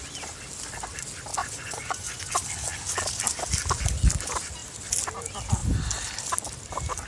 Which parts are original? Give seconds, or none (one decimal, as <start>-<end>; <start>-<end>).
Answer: 0.0-1.4; 2.3-7.1